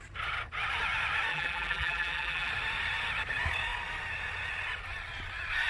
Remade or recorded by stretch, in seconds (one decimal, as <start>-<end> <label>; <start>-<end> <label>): 0.0-1.3 recorded; 1.3-2.5 remade; 2.5-5.7 recorded